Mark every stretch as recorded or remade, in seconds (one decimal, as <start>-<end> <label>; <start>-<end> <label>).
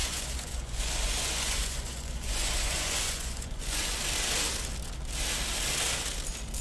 0.0-4.0 remade; 4.0-6.6 recorded